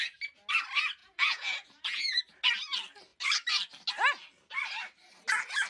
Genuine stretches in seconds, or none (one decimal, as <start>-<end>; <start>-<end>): 0.0-1.0; 2.2-5.7